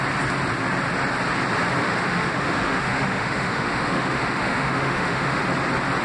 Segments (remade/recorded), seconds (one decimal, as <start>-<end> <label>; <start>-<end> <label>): 0.0-1.8 recorded; 1.8-5.4 remade; 5.4-6.0 recorded